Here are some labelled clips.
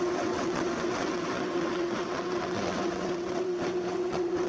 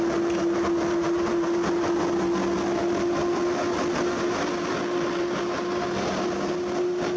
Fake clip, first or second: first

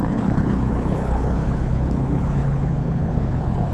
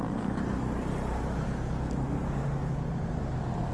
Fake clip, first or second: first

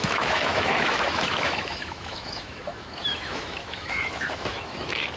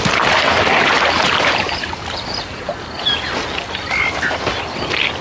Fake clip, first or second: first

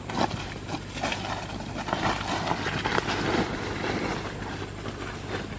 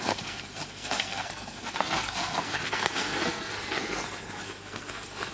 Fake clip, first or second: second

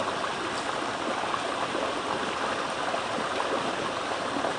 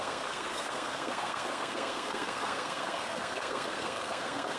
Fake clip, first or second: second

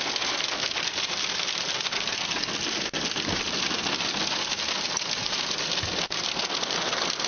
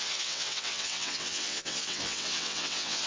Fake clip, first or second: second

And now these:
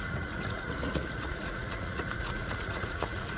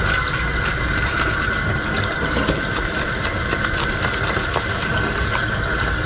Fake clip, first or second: first